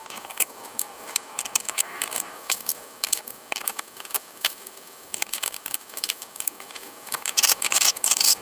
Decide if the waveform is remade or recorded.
remade